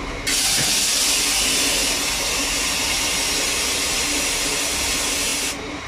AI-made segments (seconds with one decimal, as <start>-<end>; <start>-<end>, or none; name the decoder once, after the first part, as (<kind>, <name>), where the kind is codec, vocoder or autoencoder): 5.3-5.9 (vocoder, BigVGAN v2)